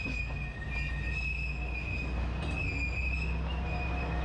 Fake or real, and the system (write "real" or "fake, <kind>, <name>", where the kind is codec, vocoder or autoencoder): real